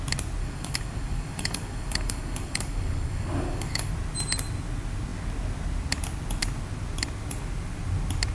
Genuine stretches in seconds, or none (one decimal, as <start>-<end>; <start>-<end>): 0.0-0.4; 3.9-8.3